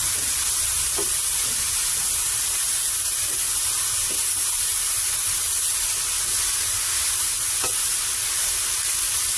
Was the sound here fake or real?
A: real